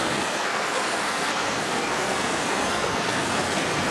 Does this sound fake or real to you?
fake